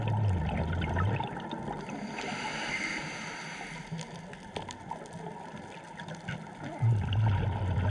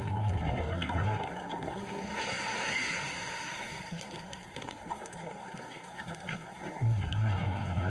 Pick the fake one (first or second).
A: second